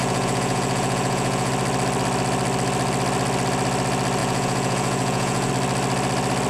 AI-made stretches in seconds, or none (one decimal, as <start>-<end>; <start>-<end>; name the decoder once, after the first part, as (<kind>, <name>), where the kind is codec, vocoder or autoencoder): 0.0-1.5 (vocoder, Vocos); 4.2-5.5